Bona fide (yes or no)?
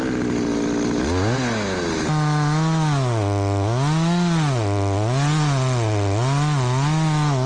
yes